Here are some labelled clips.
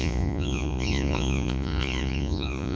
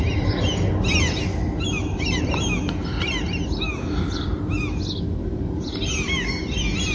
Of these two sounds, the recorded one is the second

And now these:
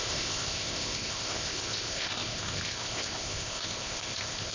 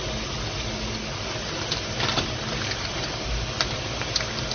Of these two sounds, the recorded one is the second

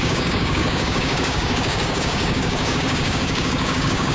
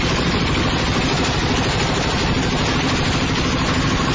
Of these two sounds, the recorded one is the second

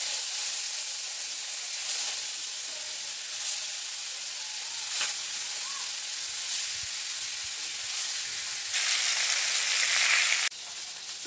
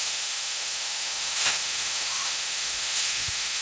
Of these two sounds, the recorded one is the first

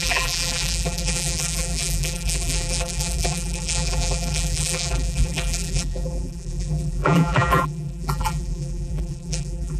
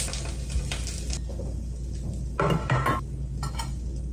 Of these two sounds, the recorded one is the second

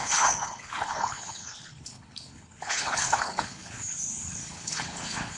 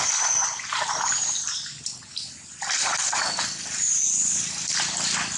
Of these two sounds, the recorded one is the second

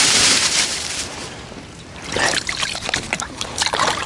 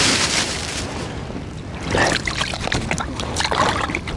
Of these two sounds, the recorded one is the second